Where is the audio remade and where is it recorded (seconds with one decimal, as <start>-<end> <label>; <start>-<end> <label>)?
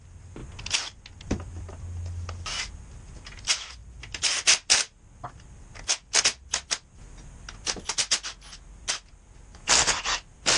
0.0-10.6 recorded